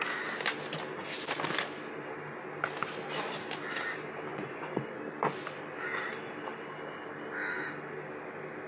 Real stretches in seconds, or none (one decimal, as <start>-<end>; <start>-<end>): 0.0-4.3; 5.0-8.7